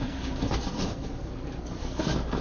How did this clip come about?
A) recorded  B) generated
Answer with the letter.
B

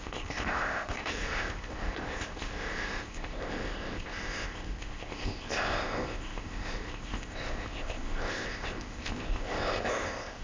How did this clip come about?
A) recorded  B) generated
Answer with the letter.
B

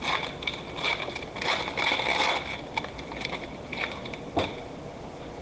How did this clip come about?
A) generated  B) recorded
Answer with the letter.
B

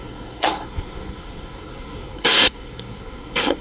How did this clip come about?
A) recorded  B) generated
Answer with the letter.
B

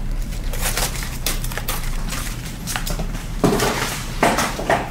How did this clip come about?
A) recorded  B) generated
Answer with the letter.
B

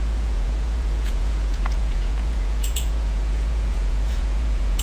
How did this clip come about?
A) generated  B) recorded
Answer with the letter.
A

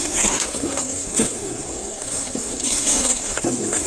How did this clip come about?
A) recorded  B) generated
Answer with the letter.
B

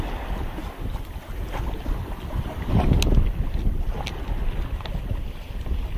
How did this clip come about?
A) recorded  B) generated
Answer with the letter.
A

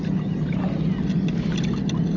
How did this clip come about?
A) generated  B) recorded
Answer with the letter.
B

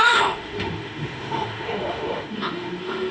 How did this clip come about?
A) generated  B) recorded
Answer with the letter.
A